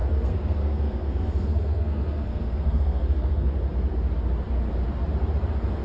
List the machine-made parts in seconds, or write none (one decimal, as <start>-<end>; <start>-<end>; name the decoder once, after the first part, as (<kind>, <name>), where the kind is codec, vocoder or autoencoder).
0.0-3.5 (codec, SNAC)